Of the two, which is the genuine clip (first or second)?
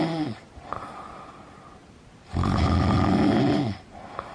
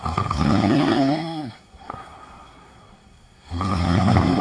first